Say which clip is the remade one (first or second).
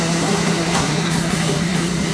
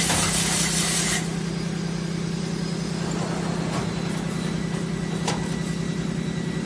first